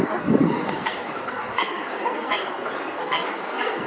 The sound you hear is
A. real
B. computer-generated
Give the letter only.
B